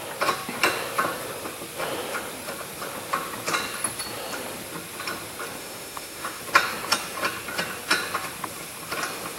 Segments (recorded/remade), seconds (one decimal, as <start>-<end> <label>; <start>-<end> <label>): 0.0-5.6 recorded; 5.6-6.4 remade; 6.4-9.4 recorded